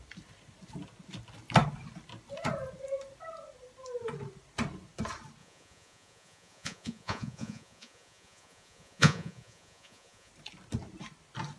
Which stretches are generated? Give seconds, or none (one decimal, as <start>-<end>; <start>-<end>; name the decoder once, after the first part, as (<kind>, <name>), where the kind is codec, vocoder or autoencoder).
5.4-10.3 (vocoder, Vocos)